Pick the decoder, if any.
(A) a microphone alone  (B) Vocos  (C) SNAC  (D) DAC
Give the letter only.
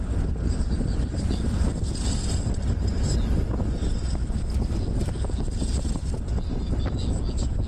A